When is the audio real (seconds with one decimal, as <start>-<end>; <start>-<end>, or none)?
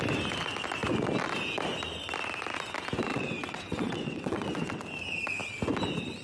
0.0-3.1; 4.8-6.2